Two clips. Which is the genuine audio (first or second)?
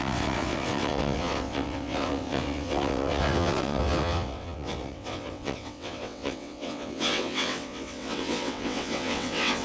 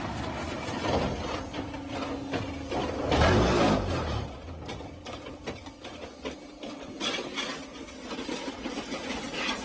second